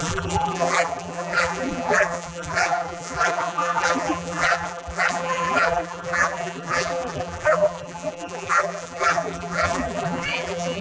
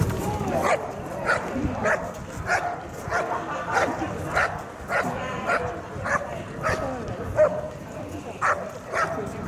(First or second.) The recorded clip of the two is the second